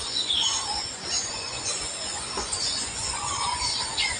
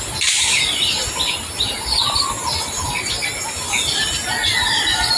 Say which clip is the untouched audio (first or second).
second